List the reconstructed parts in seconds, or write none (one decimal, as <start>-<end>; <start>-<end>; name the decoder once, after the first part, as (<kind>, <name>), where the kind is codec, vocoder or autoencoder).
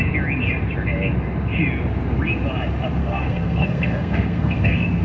3.0-5.0 (codec, SNAC)